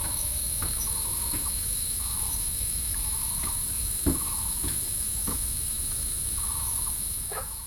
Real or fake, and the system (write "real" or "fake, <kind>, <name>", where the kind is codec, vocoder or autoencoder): fake, autoencoder, DAC-VAE